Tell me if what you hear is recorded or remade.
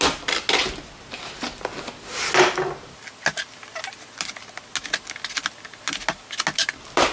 recorded